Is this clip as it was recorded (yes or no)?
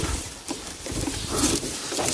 no